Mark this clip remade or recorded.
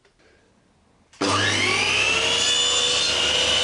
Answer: recorded